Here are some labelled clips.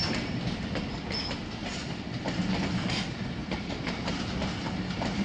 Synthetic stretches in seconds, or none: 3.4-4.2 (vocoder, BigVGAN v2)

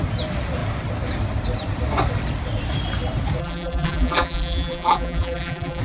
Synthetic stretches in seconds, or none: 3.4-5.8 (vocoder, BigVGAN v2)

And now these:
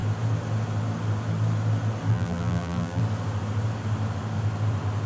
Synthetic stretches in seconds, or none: 2.1-3.0 (vocoder, BigVGAN v2)

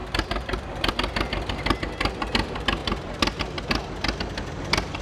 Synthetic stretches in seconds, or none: 0.0-0.9 (vocoder, BigVGAN v2)

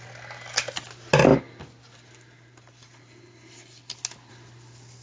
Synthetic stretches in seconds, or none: none